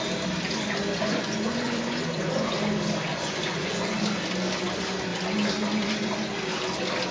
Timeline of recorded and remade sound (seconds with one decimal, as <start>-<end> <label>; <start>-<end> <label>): 0.0-0.9 recorded; 0.9-2.5 remade; 2.5-3.1 recorded; 3.1-4.0 remade; 4.0-7.1 recorded

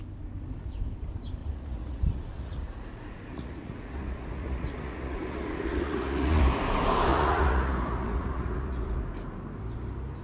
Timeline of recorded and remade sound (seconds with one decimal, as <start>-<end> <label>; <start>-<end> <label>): 0.0-1.4 recorded; 1.4-6.4 remade; 6.4-7.1 recorded; 7.1-9.0 remade; 9.0-10.2 recorded

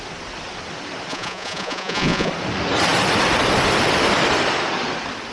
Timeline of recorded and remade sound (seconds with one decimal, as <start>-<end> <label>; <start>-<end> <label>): 0.0-1.1 recorded; 1.1-2.3 remade; 2.3-5.3 recorded

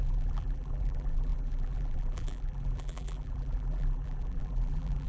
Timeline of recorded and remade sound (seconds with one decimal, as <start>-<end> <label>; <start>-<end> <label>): 0.0-5.1 remade

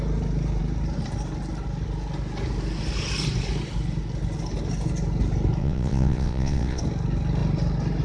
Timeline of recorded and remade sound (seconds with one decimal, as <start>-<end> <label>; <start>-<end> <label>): 0.0-5.6 recorded; 5.6-6.8 remade; 6.8-8.0 recorded

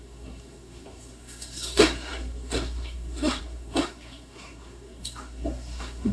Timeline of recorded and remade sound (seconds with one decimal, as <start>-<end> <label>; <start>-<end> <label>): 0.0-6.1 remade

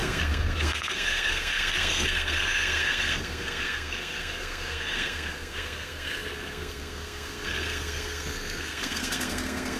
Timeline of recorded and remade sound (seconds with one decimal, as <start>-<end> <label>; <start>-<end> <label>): 0.0-9.8 remade

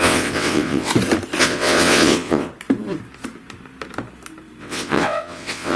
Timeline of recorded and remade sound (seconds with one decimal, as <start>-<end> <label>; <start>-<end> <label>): 0.0-0.9 remade; 0.9-1.4 recorded; 1.4-2.5 remade; 2.5-4.6 recorded; 4.6-5.8 remade